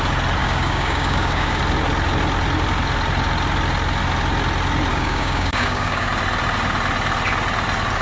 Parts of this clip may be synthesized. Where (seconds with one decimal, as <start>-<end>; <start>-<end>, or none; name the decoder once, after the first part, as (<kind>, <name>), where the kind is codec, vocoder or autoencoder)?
0.4-1.6 (codec, DAC); 4.9-6.1